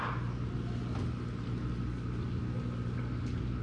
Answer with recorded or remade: recorded